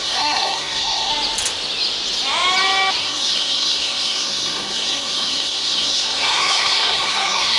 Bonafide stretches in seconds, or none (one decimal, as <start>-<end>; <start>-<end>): 1.1-3.0